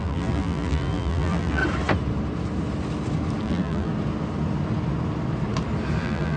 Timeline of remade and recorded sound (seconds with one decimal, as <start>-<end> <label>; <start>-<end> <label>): 0.0-1.6 remade; 1.6-3.4 recorded; 3.4-3.9 remade; 3.9-6.0 recorded; 6.0-6.4 remade